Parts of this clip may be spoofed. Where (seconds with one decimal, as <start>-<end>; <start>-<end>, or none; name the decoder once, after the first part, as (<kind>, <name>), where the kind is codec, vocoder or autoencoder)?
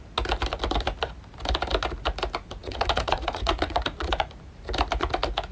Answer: 2.6-4.3 (vocoder, Vocos)